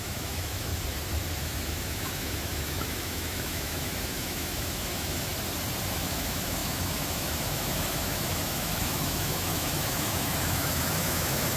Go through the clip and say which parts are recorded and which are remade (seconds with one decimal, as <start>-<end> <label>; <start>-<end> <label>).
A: 0.0-0.7 remade; 0.7-1.4 recorded; 1.4-5.3 remade; 5.3-5.9 recorded; 5.9-11.6 remade

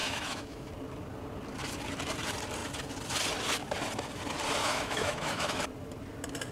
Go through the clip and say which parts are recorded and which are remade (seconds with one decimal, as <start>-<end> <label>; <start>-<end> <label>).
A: 0.0-0.7 remade; 0.7-4.6 recorded; 4.6-5.6 remade; 5.6-6.5 recorded

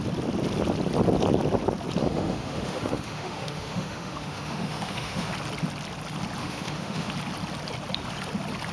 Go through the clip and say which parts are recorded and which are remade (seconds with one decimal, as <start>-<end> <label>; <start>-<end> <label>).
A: 0.0-2.0 recorded; 2.0-5.3 remade; 5.3-6.4 recorded; 6.4-7.1 remade; 7.1-8.7 recorded